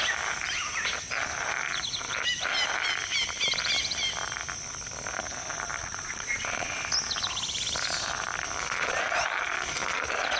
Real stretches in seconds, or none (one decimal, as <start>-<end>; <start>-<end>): 0.0-5.8; 6.8-10.4